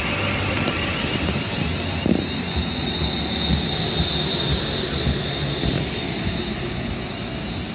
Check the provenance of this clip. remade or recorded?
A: recorded